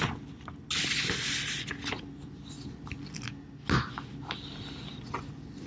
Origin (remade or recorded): recorded